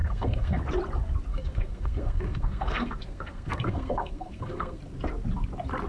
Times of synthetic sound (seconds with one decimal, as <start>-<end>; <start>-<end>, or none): 0.0-0.6; 1.3-4.8

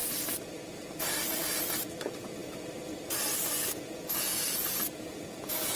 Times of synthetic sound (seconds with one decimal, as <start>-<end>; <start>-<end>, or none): 3.6-5.8

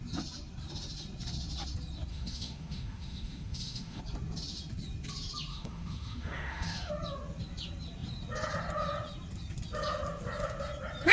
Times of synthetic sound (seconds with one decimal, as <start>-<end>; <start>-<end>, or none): 2.1-4.0; 5.5-6.9

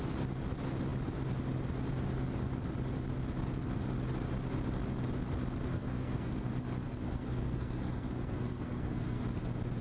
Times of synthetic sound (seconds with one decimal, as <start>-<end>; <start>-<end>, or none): 5.7-6.5; 6.9-9.2

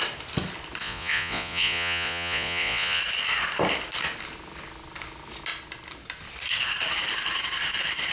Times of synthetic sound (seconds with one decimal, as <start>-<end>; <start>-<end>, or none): 0.8-3.0